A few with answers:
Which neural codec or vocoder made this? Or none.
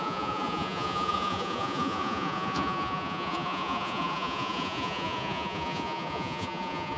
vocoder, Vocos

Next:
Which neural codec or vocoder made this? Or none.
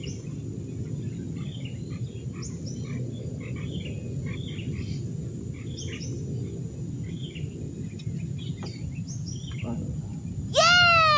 none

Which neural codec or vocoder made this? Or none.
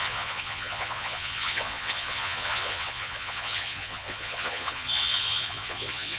vocoder, Vocos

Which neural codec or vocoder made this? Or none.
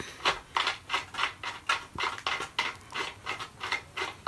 none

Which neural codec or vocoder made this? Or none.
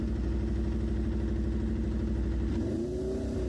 none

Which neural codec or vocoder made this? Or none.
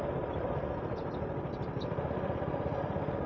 none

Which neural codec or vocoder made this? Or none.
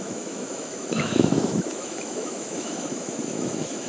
autoencoder, DAC-VAE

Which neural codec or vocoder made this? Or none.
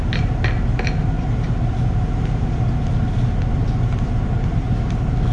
none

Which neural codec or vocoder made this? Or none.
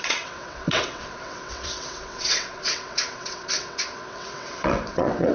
vocoder, WaveNeXt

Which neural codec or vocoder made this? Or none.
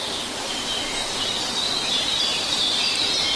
none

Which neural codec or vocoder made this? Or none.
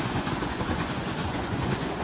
vocoder, Vocos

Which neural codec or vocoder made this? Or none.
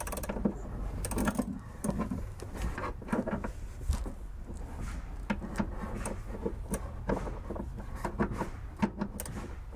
none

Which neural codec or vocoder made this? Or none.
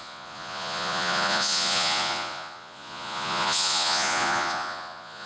vocoder, Vocos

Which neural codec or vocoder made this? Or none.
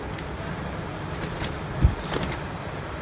none